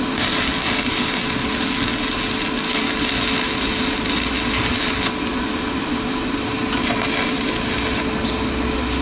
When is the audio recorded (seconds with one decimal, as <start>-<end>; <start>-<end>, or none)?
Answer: 0.0-5.3; 5.9-9.0